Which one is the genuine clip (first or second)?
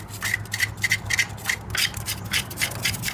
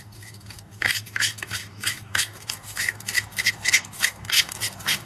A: first